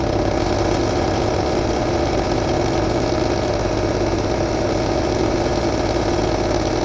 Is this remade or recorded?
recorded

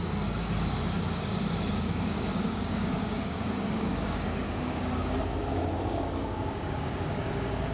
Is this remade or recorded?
remade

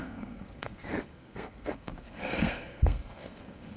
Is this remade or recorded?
remade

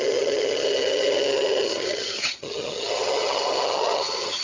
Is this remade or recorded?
remade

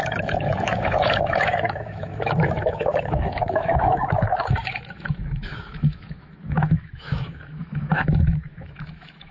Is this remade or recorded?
remade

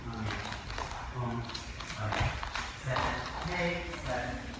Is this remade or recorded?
recorded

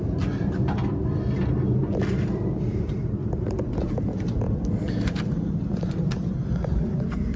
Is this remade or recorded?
recorded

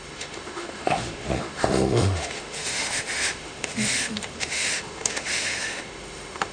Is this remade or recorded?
remade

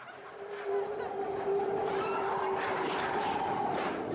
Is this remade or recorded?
recorded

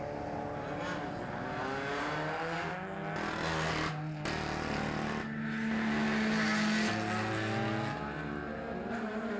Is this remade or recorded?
recorded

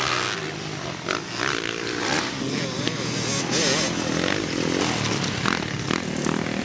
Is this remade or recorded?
recorded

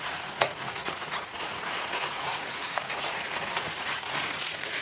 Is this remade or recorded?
remade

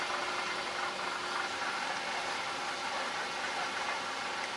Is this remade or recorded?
recorded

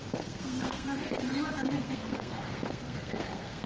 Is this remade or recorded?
remade